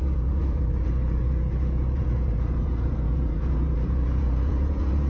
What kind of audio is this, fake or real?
fake